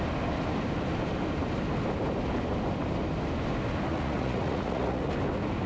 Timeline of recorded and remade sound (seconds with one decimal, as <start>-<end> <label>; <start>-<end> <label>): 0.0-3.9 recorded; 3.9-5.1 remade; 5.1-5.7 recorded